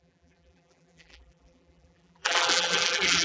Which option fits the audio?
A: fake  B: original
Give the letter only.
A